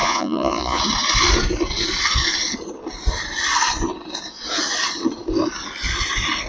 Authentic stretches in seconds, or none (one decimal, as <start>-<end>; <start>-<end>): 0.8-6.5